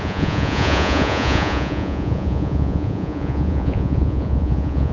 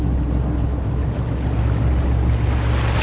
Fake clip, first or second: first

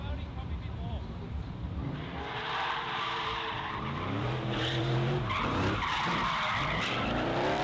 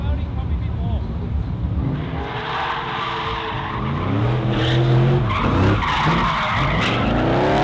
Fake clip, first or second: first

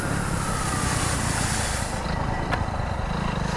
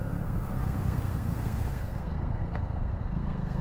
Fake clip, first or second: second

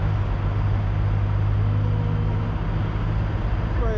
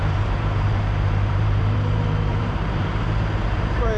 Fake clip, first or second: second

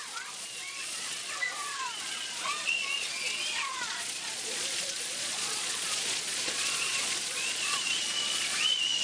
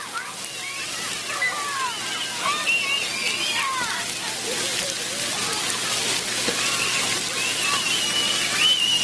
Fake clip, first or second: first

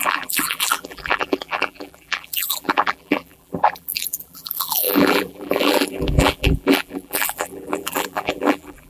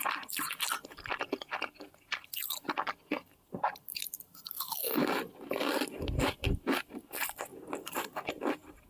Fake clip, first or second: first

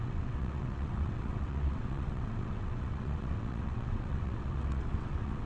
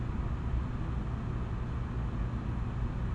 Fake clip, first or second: first